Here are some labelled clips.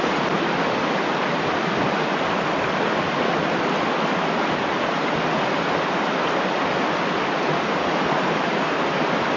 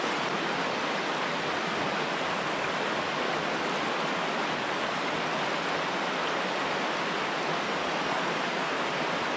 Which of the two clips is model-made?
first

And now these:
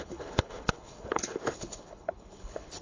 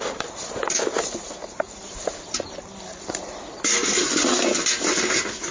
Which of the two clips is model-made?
first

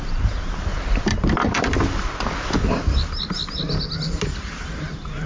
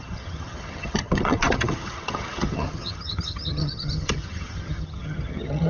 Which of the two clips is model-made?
second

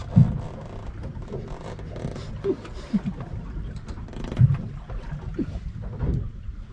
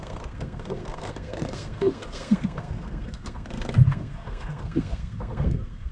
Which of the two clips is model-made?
second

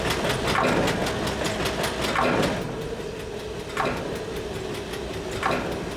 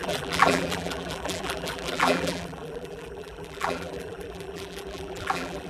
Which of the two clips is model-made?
second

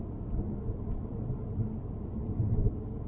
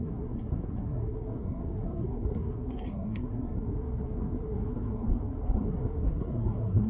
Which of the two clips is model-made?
second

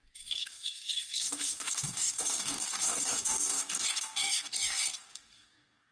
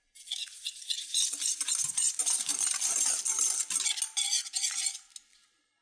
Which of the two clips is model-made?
first